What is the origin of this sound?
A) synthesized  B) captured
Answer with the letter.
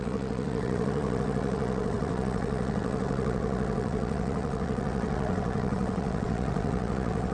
A